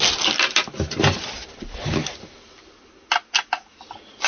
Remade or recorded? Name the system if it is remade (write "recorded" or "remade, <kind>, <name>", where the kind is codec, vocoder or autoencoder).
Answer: recorded